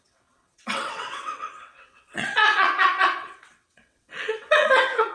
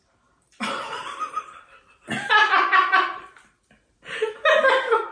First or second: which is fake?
first